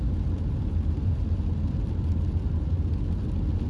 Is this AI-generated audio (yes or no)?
no